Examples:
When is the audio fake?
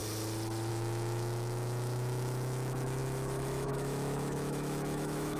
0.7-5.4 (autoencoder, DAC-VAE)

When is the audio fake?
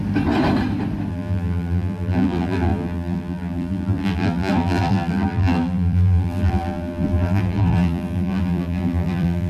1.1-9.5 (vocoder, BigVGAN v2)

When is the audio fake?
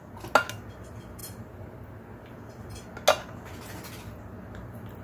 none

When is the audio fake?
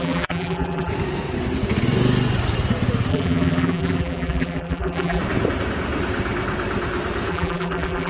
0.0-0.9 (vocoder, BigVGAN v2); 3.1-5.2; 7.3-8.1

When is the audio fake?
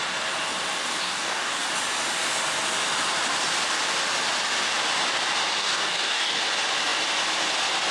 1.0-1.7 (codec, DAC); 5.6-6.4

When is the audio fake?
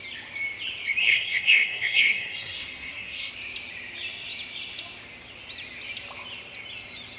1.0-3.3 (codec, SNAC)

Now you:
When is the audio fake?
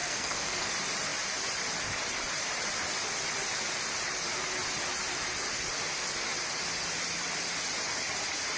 0.0-0.7 (codec, SNAC)